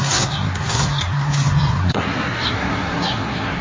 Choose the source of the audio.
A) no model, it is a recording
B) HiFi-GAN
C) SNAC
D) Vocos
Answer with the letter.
C